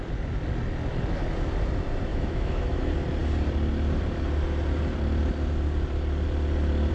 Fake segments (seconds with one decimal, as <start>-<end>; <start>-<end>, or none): 2.1-2.8

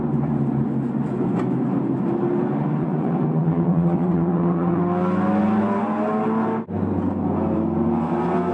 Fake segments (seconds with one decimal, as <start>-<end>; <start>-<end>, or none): 2.8-4.8

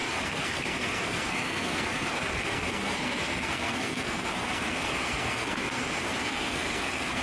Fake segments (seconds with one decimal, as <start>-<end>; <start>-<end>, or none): 0.0-7.2

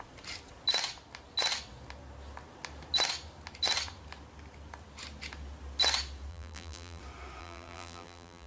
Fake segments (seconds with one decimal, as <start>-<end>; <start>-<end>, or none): 6.3-7.0; 7.4-8.5

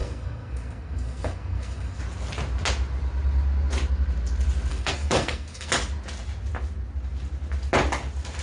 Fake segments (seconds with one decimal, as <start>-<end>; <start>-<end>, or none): 0.0-2.0; 4.7-5.7